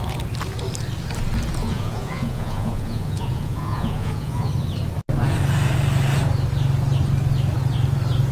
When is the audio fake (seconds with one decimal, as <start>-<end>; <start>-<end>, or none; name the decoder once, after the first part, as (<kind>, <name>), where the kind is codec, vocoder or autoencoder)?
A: 1.6-4.5 (vocoder, Vocos)